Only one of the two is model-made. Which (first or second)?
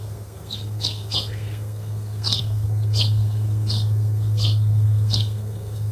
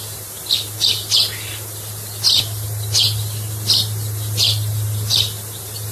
first